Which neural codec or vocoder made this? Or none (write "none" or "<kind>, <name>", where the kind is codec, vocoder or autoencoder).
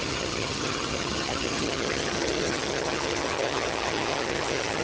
vocoder, HiFi-GAN